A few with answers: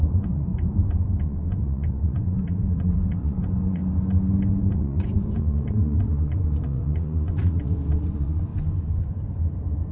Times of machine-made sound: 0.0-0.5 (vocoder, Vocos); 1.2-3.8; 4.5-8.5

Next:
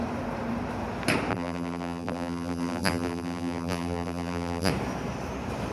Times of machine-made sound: 1.3-4.7 (vocoder, BigVGAN v2)

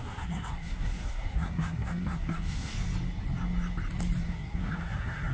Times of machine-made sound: 0.0-2.7 (codec, SNAC); 4.2-5.3

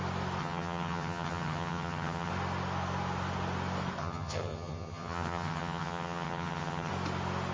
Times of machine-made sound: 0.4-2.3 (vocoder, HiFi-GAN); 4.0-6.9

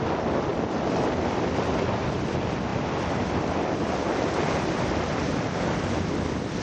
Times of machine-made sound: none